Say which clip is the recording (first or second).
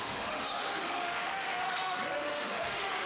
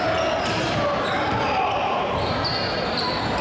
second